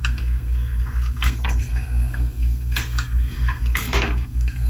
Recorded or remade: remade